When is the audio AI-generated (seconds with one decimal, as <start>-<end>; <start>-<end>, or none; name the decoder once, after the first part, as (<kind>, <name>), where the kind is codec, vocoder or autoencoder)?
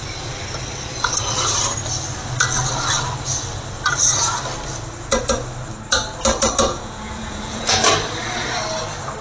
6.7-7.8 (vocoder, Vocos)